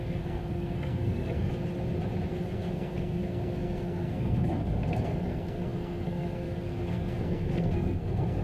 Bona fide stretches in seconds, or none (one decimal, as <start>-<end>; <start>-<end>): 1.5-2.3